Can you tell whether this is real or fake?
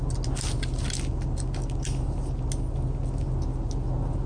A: real